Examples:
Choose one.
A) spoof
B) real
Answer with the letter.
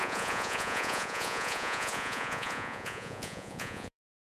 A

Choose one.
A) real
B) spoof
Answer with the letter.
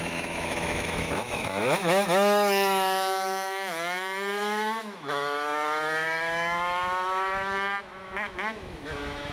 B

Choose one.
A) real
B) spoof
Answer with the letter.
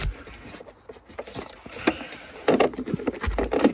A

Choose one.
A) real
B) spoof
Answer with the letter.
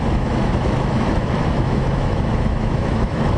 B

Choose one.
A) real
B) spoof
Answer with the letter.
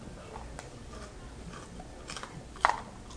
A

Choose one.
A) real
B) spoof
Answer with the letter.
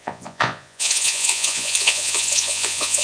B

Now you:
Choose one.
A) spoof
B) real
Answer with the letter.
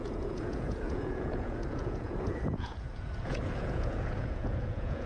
A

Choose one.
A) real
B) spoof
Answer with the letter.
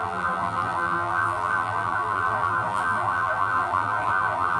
B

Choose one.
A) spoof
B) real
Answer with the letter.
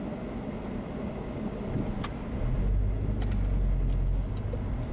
B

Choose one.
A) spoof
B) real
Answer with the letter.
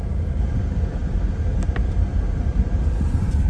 B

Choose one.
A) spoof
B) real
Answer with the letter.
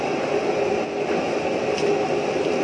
B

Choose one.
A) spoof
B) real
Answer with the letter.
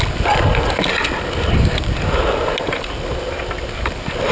B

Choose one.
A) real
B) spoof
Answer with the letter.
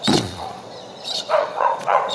B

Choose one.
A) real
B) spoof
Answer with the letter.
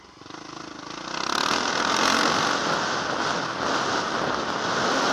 A